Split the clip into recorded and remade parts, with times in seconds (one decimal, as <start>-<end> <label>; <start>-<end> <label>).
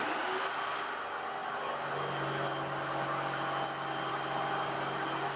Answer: 0.0-5.4 recorded